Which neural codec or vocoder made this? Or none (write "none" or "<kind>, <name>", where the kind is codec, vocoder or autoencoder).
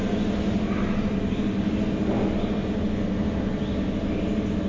none